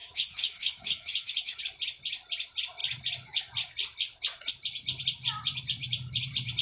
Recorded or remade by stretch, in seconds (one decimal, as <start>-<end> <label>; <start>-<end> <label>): 0.0-1.6 remade; 1.6-6.6 recorded